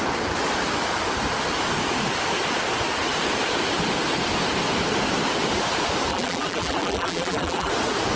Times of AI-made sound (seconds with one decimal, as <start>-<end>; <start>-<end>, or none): 6.1-7.7